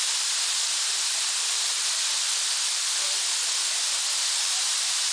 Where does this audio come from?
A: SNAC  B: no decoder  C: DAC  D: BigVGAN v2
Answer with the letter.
B